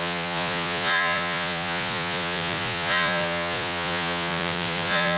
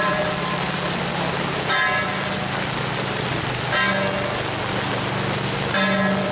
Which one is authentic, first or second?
second